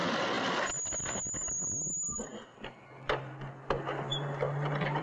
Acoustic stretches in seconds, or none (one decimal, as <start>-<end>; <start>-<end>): 0.0-5.0